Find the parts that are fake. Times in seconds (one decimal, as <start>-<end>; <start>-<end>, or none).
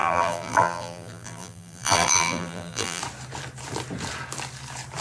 0.0-3.0